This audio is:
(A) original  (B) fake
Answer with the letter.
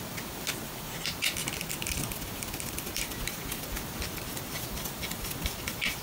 A